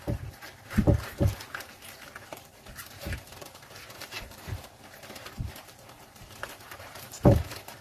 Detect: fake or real fake